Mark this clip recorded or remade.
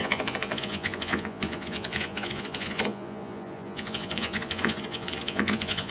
remade